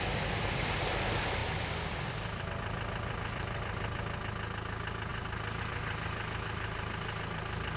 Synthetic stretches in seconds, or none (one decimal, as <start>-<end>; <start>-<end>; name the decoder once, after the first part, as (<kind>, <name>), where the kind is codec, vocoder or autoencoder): 1.4-2.5 (vocoder, BigVGAN v2); 5.1-5.6